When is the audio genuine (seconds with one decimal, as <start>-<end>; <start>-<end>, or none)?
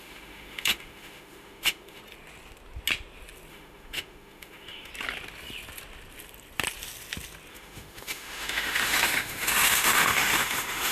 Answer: 2.0-3.5; 4.9-7.5